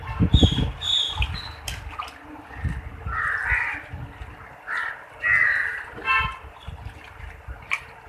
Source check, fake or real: real